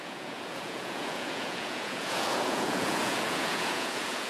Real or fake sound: fake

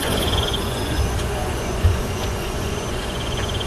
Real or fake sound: fake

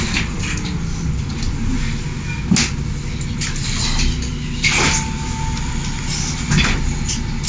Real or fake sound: real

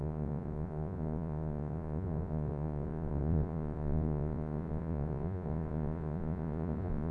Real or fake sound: fake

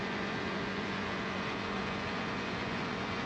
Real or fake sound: fake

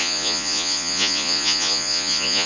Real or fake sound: fake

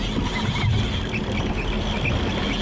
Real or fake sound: real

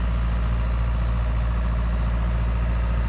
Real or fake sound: real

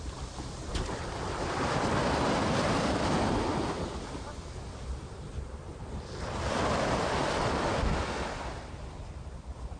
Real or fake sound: real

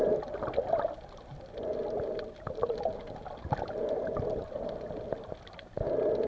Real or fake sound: real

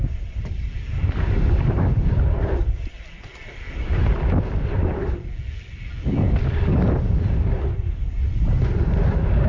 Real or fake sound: real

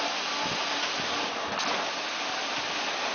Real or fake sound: real